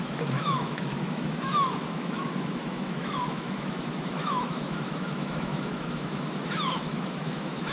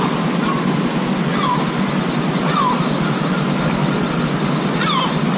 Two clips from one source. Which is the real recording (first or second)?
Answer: second